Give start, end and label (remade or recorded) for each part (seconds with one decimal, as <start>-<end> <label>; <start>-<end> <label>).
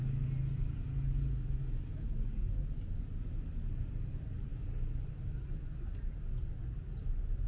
0.0-7.5 recorded